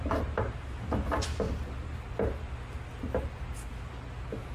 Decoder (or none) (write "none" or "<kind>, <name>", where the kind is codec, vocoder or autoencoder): none